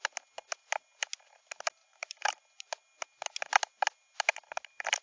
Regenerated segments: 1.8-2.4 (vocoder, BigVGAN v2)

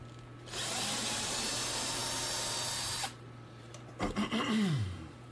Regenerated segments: 0.6-2.0 (vocoder, BigVGAN v2); 3.0-5.3

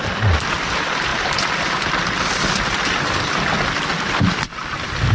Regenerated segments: none

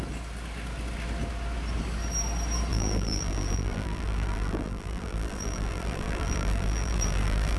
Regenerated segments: 2.7-7.6 (vocoder, BigVGAN v2)

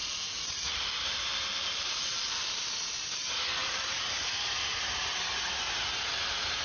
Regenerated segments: 0.0-2.7 (vocoder, BigVGAN v2); 3.6-4.2

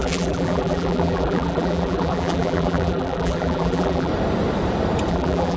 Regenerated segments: 0.0-4.1 (vocoder, BigVGAN v2); 5.1-5.6

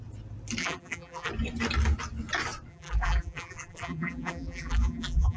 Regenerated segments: 0.6-1.3 (vocoder, BigVGAN v2); 2.7-5.4

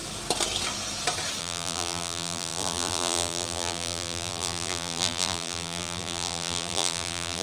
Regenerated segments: 1.4-7.4 (vocoder, BigVGAN v2)